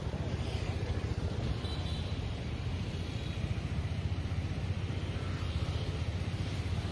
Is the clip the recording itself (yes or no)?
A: yes